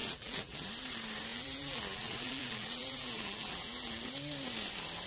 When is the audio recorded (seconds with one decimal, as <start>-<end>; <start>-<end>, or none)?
0.7-1.3; 4.0-5.1